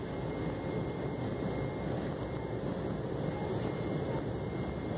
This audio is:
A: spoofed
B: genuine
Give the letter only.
B